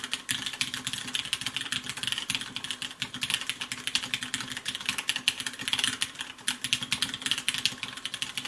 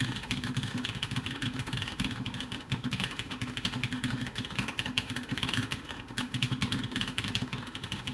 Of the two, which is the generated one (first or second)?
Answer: second